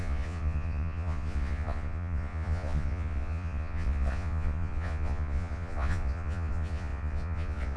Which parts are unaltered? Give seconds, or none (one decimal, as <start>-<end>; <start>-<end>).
none